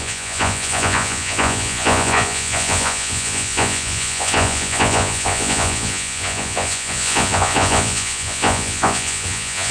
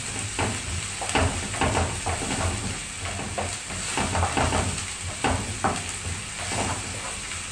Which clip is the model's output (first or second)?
first